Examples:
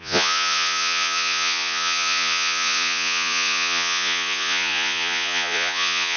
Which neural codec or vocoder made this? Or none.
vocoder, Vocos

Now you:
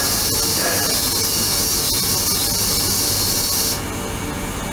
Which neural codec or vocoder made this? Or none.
none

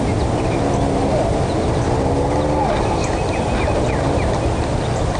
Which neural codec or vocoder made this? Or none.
none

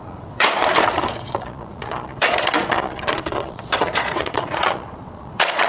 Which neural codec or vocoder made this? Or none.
vocoder, Vocos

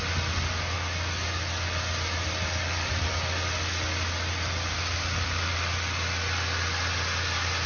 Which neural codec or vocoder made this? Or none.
none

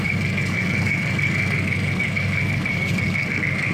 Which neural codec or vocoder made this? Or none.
codec, SNAC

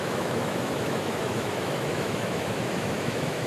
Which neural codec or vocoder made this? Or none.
autoencoder, DAC-VAE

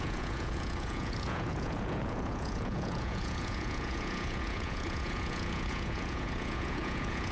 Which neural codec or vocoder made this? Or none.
vocoder, Vocos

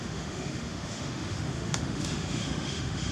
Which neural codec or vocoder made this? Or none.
autoencoder, DAC-VAE